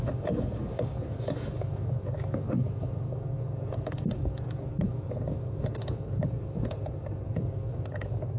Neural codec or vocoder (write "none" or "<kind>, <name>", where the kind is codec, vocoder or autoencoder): codec, DAC